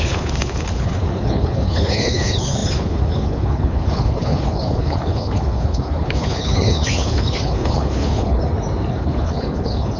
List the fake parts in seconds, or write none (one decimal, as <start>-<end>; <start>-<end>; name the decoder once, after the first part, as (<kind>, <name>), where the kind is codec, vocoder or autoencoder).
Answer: 0.0-8.4 (codec, HILCodec); 8.9-10.0